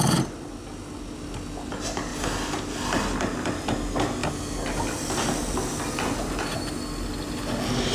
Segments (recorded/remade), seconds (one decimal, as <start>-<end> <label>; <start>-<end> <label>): 0.0-7.9 recorded